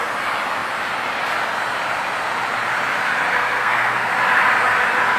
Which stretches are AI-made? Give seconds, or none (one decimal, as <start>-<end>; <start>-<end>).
3.3-4.1